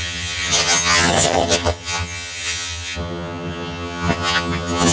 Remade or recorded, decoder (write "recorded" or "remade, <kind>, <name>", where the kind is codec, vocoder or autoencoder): remade, vocoder, HiFi-GAN